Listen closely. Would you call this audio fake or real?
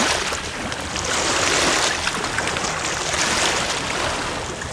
real